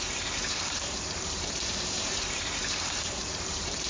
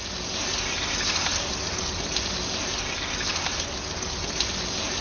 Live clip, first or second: second